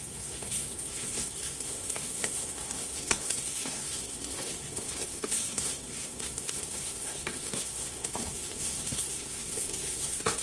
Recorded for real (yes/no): no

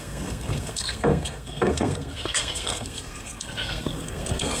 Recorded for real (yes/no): no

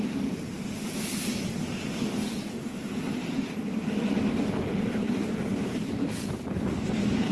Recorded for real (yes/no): yes